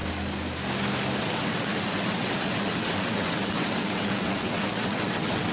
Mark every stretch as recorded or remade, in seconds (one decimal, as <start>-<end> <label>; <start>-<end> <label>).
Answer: 0.0-1.2 recorded; 1.2-5.5 remade